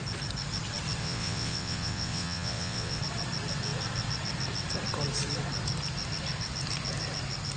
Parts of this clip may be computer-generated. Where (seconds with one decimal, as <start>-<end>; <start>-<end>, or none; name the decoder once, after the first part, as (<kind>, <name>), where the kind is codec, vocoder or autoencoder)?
1.0-3.0 (vocoder, WaveNeXt)